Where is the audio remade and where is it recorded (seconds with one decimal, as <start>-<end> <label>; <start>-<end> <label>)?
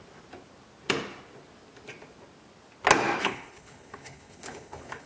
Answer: 0.0-3.2 recorded; 3.2-5.1 remade